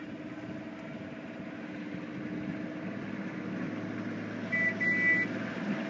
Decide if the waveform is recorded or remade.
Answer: recorded